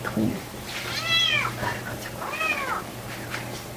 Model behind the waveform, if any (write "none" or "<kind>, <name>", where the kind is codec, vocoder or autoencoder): none